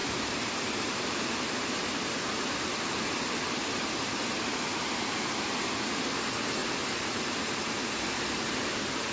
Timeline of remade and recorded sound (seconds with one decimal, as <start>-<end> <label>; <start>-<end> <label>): 0.0-4.1 remade; 4.1-6.6 recorded; 6.6-7.8 remade; 7.8-9.1 recorded